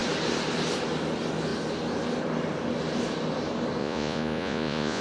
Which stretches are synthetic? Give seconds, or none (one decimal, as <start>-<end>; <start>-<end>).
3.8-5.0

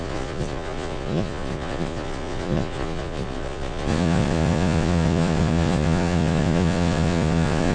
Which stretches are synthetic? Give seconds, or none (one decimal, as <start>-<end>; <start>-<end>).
0.0-7.7

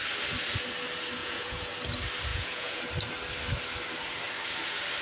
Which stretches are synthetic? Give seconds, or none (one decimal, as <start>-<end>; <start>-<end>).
1.2-1.7; 2.3-2.9

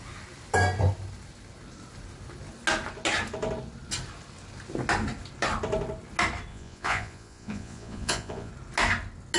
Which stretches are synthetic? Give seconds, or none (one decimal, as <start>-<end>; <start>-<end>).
6.5-8.5

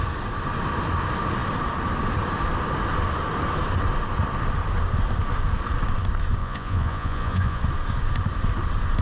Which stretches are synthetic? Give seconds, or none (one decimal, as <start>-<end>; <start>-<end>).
6.4-7.6

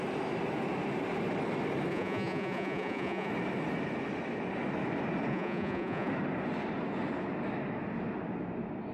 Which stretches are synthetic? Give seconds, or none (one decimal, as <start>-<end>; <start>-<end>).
1.9-3.3; 5.3-6.1